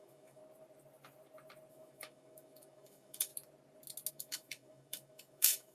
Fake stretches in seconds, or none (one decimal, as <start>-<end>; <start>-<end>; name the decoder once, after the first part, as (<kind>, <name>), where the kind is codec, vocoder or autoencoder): 0.0-0.4 (autoencoder, DAC-VAE); 1.7-3.3; 4.1-5.7